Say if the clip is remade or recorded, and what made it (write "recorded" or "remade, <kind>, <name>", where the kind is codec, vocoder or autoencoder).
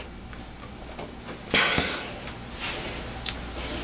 recorded